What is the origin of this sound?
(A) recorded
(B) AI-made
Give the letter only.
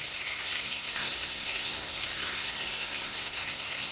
B